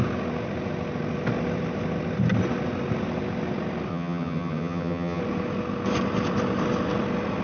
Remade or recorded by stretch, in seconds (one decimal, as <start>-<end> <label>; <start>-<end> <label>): 0.0-3.9 recorded; 3.9-5.2 remade; 5.2-7.4 recorded